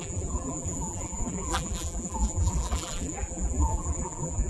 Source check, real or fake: fake